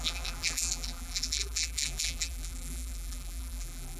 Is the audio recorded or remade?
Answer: remade